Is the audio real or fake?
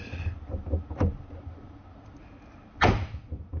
real